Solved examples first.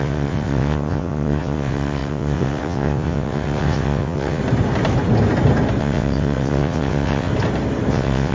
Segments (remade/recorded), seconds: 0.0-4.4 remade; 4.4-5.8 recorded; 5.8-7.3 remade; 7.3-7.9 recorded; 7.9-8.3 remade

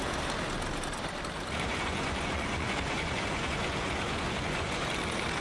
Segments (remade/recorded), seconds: 0.0-1.7 recorded; 1.7-4.9 remade; 4.9-5.4 recorded

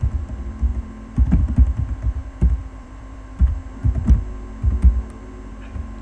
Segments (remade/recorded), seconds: 0.0-3.6 remade; 3.6-5.5 recorded; 5.5-6.0 remade

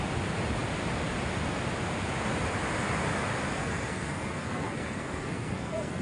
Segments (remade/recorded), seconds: 0.0-3.5 recorded; 3.5-6.0 remade

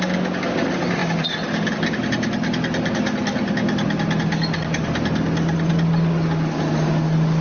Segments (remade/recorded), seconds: 0.0-7.4 recorded